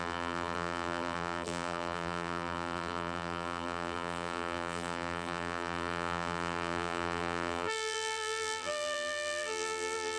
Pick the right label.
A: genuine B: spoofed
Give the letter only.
B